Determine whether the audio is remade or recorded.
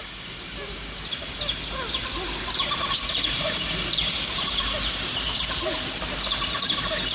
recorded